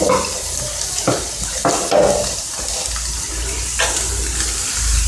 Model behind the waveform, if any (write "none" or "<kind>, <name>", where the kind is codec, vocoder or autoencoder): none